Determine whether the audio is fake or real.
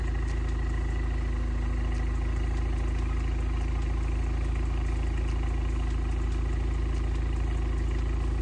real